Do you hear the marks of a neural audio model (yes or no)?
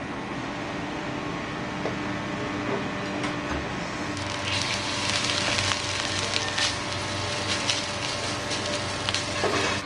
no